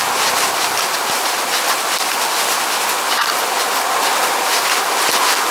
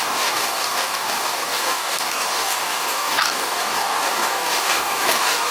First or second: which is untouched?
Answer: first